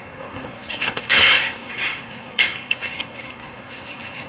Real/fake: fake